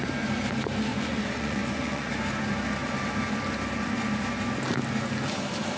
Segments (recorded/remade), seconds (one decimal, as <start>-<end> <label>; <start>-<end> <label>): 0.0-0.9 recorded; 0.9-2.1 remade; 2.1-5.8 recorded